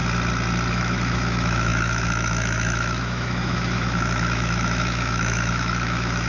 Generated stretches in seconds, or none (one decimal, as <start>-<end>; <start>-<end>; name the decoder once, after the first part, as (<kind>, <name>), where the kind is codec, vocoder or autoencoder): 0.7-6.3 (autoencoder, DAC-VAE)